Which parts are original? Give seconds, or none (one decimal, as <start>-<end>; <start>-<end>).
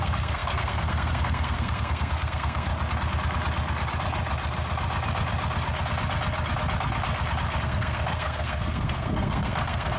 2.7-7.6